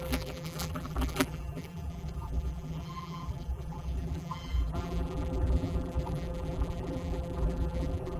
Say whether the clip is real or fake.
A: fake